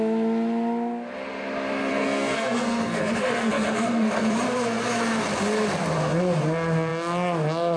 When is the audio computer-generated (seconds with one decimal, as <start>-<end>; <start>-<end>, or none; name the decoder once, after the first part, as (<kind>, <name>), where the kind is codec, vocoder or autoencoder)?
1.9-4.3 (codec, SNAC)

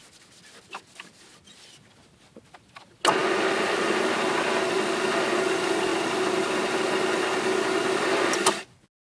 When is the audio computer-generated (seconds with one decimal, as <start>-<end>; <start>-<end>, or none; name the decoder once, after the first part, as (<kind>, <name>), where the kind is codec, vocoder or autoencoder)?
none